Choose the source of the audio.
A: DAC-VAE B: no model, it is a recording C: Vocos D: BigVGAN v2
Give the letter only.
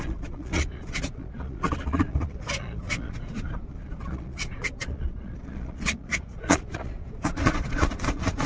C